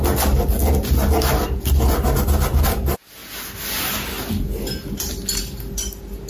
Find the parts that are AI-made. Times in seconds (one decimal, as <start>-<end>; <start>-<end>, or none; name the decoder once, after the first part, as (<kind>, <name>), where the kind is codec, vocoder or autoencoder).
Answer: none